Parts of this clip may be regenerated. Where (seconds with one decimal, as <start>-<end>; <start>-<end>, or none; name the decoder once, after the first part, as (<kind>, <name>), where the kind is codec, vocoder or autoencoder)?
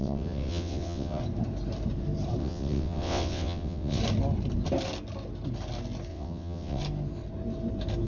0.0-1.2 (vocoder, WaveNeXt); 2.4-4.0; 6.1-6.8